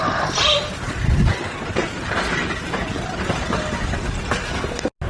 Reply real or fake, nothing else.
real